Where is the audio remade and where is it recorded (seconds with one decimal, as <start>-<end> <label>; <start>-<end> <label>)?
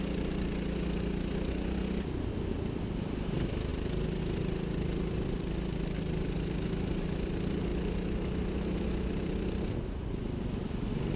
0.0-11.2 recorded